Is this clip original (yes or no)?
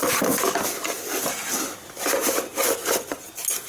yes